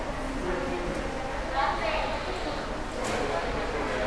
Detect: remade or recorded recorded